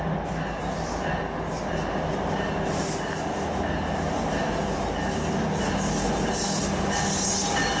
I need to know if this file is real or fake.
real